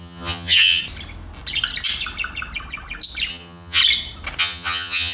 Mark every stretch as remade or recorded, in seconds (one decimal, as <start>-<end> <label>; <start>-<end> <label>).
0.0-0.8 remade; 0.8-3.3 recorded; 3.3-3.8 remade; 3.8-4.4 recorded; 4.4-5.1 remade